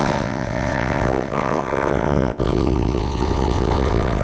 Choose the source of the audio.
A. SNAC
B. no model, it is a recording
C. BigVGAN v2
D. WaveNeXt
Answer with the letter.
D